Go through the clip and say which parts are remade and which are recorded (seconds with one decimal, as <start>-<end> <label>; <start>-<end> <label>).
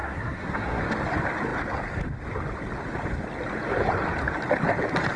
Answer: 0.0-0.8 remade; 0.8-5.2 recorded